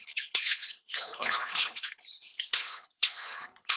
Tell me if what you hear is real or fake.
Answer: fake